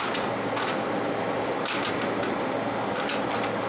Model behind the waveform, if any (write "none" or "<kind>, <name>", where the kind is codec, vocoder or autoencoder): none